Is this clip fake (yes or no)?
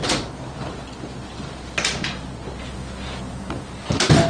no